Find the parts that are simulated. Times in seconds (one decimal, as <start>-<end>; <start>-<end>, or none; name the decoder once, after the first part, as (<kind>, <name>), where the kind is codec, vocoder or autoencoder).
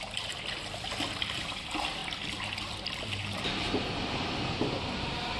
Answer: 0.0-5.4 (vocoder, BigVGAN v2)